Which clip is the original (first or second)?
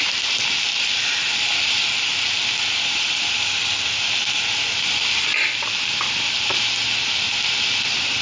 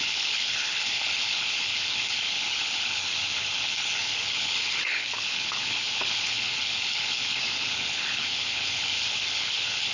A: first